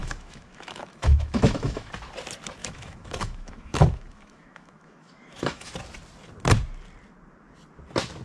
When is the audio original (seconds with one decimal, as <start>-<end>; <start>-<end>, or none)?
1.9-2.6; 5.7-8.2